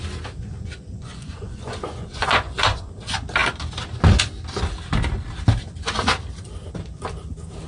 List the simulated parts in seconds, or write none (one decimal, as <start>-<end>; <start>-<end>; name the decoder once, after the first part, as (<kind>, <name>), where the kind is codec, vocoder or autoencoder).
0.4-2.9 (vocoder, Vocos)